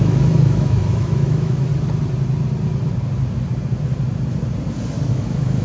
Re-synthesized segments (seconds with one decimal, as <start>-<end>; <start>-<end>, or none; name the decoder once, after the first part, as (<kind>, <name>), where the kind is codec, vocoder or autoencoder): 0.0-1.7 (autoencoder, DAC-VAE); 5.1-5.6